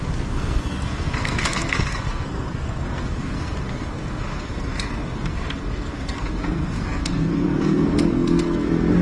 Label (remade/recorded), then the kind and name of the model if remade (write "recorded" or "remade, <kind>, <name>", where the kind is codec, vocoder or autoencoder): remade, codec, SNAC